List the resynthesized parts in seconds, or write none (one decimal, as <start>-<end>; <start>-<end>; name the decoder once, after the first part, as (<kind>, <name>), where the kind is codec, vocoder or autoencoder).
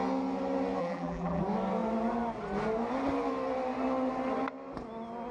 0.8-1.4 (vocoder, BigVGAN v2)